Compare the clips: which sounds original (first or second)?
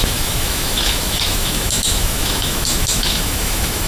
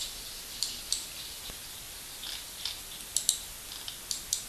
second